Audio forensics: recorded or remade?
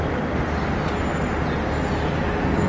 recorded